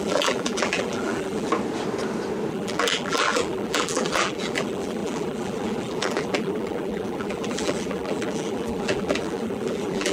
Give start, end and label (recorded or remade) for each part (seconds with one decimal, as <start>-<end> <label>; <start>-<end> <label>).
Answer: 0.0-1.5 remade; 1.5-2.5 recorded; 2.5-10.1 remade